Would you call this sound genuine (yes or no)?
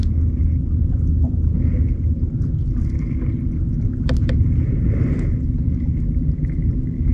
yes